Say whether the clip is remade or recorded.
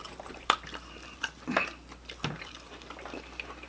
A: remade